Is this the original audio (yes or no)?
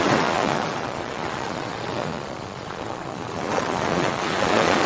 no